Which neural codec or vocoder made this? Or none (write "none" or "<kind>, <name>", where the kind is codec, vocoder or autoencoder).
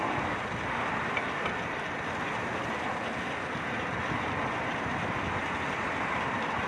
none